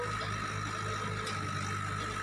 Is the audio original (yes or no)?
yes